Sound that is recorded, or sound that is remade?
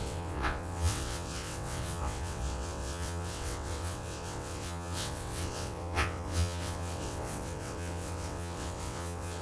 remade